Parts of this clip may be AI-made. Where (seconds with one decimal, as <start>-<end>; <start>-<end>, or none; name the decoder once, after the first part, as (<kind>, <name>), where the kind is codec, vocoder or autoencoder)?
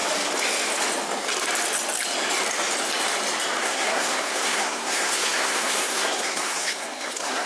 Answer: 3.6-7.5 (codec, SNAC)